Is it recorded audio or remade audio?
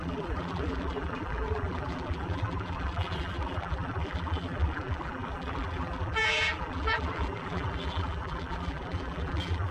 remade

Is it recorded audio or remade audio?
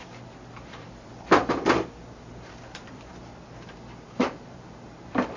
remade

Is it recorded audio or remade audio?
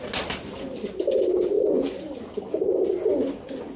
recorded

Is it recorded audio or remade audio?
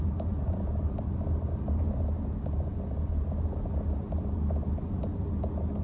recorded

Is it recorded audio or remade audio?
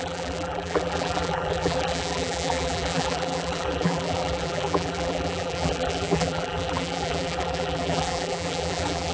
remade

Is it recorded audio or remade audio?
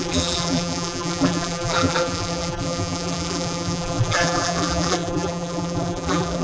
remade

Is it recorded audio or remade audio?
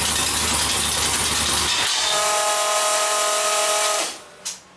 recorded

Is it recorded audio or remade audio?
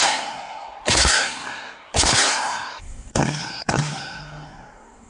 remade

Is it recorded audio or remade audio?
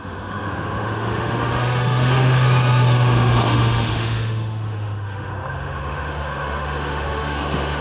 remade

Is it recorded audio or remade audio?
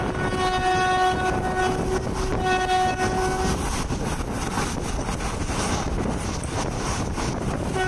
recorded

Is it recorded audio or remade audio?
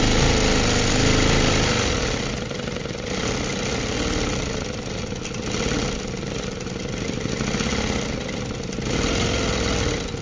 recorded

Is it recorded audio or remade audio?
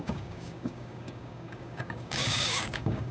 remade